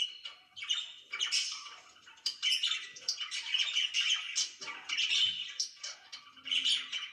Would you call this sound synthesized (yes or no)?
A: no